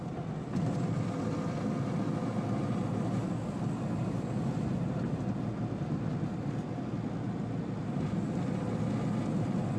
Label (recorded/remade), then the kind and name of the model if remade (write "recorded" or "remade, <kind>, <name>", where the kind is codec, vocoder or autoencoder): recorded